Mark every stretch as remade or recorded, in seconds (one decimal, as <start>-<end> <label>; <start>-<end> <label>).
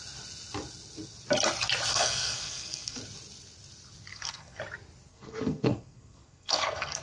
0.0-1.9 recorded; 1.9-3.0 remade; 3.0-4.1 recorded; 4.1-4.6 remade; 4.6-5.1 recorded; 5.1-7.0 remade